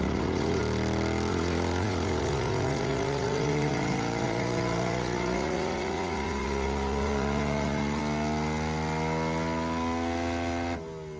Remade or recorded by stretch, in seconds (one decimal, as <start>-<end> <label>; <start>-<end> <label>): 0.0-0.6 remade; 0.6-1.3 recorded; 1.3-8.0 remade; 8.0-11.2 recorded